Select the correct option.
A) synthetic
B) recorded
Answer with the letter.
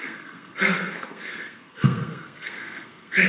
A